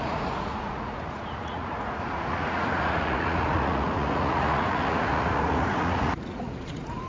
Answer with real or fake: fake